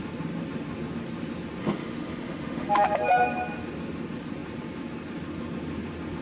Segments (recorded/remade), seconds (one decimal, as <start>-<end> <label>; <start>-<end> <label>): 0.0-1.6 recorded; 1.6-2.7 remade; 2.7-6.2 recorded